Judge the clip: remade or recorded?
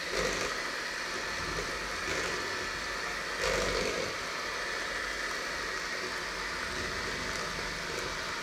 recorded